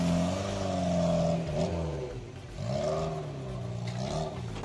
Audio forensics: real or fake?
real